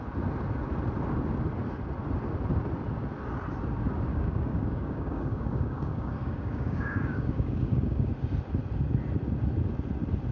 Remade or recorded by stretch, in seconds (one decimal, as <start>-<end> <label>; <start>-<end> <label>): 0.0-4.1 recorded; 4.1-8.1 remade; 8.1-10.3 recorded